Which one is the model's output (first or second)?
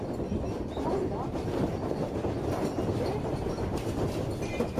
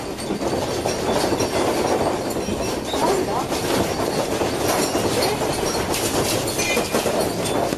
first